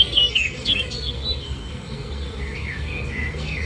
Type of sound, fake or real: fake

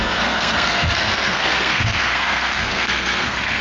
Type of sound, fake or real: fake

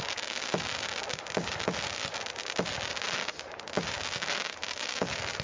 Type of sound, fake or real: real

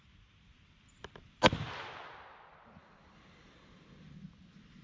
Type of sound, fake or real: real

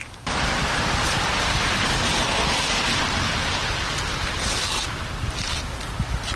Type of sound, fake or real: real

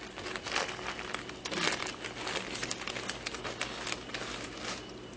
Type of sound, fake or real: real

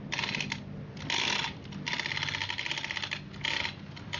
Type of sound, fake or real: real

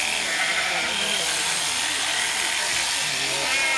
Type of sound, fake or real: real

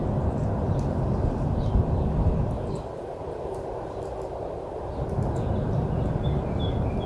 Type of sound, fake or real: real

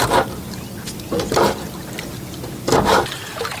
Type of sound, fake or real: real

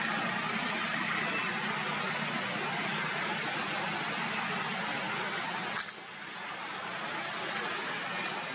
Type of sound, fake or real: real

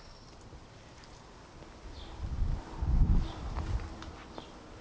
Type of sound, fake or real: real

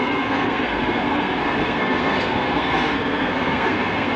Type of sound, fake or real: fake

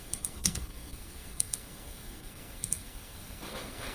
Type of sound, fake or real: fake